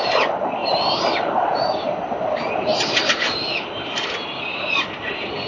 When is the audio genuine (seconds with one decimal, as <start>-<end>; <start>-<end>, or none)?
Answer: 0.0-0.6; 1.6-5.5